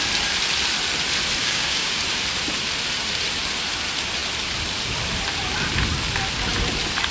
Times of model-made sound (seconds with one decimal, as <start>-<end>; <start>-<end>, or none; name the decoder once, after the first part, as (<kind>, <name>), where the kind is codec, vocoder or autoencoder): 1.4-2.0 (codec, DAC)